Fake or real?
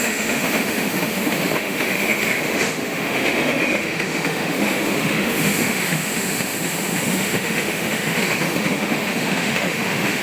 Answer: fake